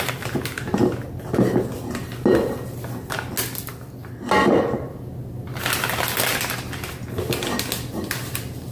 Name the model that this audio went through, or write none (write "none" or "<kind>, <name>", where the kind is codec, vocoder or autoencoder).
none